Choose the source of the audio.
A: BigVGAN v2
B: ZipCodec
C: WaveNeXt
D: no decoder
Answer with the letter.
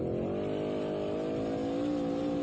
D